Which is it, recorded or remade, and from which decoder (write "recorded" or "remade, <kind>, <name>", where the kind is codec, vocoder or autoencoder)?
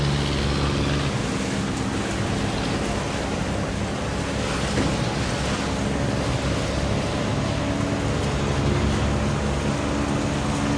recorded